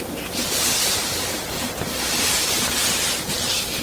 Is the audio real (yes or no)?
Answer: yes